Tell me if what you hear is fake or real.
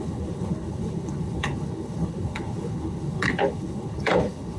fake